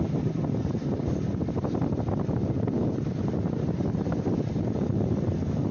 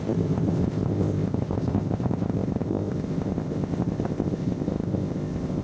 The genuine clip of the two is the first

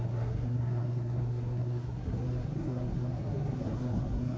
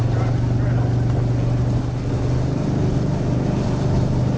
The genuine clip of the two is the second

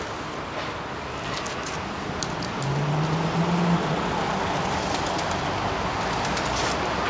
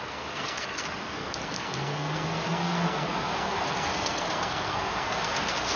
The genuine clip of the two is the first